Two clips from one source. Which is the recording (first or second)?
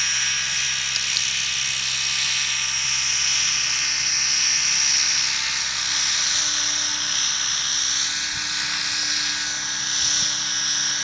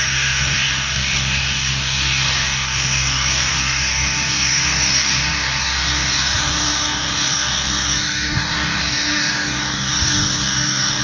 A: first